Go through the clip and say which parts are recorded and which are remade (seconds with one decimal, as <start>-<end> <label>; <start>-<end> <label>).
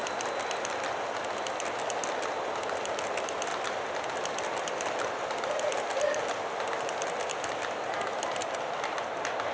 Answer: 0.0-9.5 recorded